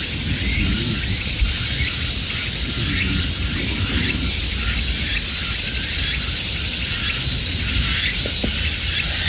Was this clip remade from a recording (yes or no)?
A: no